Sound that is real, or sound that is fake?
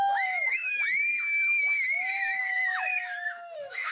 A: fake